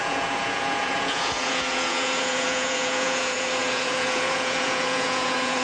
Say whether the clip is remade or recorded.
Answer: remade